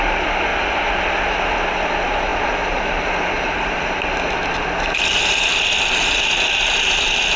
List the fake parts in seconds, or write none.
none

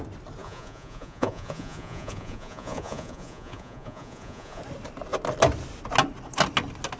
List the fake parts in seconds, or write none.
0.4-4.6 (vocoder, Vocos)

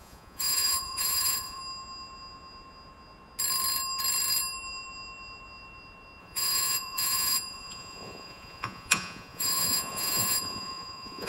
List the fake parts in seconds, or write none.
0.0-1.6 (vocoder, Vocos); 6.2-11.3

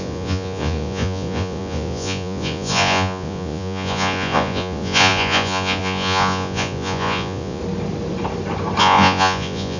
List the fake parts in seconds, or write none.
0.0-7.6 (vocoder, Vocos); 8.8-9.8